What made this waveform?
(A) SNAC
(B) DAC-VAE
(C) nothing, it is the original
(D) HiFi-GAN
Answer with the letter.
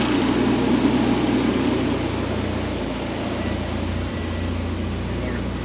C